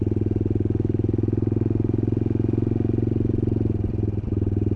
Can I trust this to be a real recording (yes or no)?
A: yes